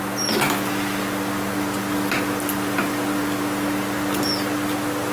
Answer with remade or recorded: recorded